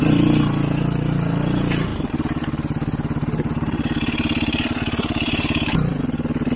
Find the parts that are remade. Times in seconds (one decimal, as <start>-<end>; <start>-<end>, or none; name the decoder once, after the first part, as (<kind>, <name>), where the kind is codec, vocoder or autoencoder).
1.9-5.9 (vocoder, BigVGAN v2)